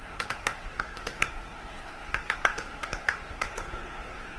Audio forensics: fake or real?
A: fake